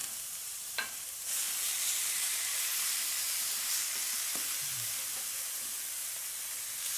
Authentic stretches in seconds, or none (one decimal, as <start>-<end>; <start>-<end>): 4.2-7.0